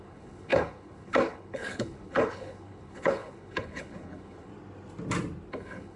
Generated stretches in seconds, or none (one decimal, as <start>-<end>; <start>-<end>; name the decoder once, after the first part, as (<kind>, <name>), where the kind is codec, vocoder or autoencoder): 0.0-4.5 (codec, HILCodec); 5.5-6.0